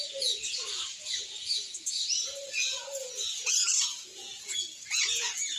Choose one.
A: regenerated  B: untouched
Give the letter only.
A